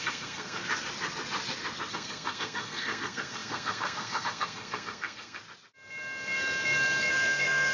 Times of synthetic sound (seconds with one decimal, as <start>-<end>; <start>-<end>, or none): 0.0-0.6; 1.9-5.4; 7.1-7.7